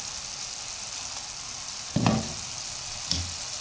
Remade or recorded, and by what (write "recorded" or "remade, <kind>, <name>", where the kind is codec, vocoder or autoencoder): recorded